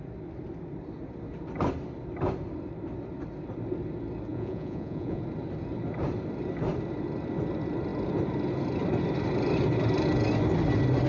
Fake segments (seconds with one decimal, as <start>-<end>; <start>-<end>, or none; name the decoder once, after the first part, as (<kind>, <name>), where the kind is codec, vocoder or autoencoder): 4.3-5.2 (vocoder, Vocos)